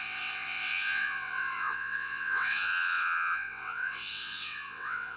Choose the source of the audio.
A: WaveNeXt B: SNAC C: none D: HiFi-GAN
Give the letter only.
A